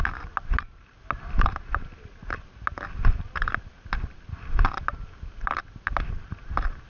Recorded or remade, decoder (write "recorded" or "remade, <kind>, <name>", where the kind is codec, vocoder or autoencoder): recorded